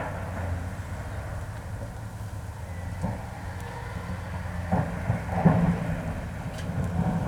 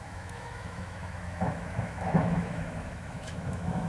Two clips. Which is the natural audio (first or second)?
first